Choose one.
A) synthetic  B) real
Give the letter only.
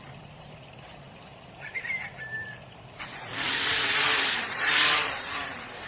A